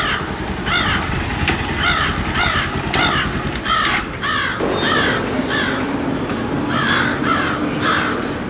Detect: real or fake real